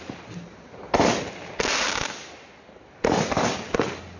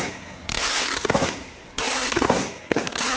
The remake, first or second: second